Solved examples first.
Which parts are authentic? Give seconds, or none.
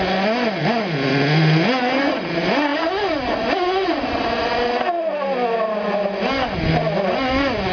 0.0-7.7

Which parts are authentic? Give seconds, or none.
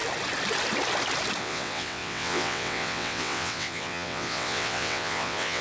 0.0-1.4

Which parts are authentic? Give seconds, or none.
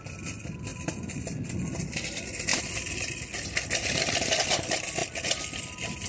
0.0-6.1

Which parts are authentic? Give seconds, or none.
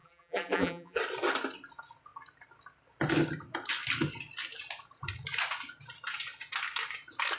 1.0-7.4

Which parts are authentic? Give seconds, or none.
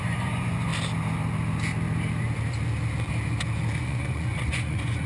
0.7-3.8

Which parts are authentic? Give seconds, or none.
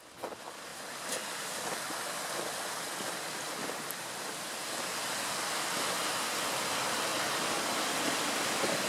0.0-8.9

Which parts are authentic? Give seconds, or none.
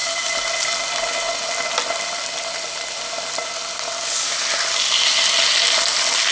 0.0-6.3